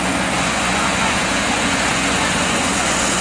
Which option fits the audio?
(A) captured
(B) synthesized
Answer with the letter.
B